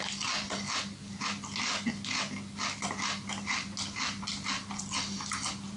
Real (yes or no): yes